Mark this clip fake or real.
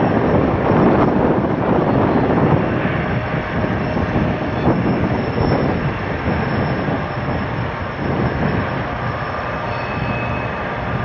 real